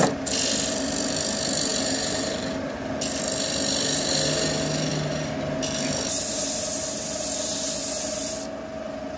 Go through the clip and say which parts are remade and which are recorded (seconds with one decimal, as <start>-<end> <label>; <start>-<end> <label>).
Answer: 0.0-9.2 recorded